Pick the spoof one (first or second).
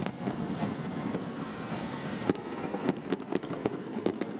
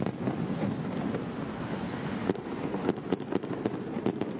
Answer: first